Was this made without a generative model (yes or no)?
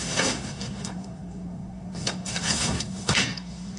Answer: no